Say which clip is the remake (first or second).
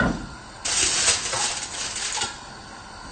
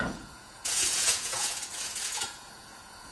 second